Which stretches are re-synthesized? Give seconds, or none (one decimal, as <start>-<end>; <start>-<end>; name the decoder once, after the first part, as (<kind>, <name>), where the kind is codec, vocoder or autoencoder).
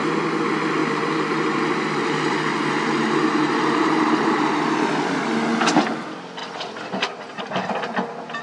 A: 0.8-4.8 (vocoder, BigVGAN v2); 6.4-7.4